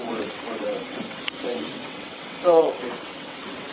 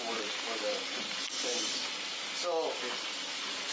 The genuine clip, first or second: second